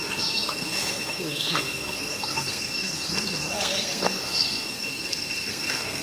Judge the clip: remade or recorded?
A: remade